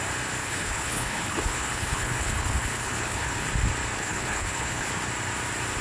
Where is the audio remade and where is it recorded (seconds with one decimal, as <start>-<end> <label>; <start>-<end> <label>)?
0.0-0.4 recorded; 0.4-3.5 remade; 3.5-4.0 recorded; 4.0-4.9 remade; 4.9-5.8 recorded